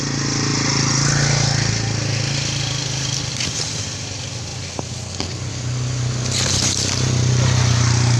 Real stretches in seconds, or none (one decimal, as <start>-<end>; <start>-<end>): 0.0-8.2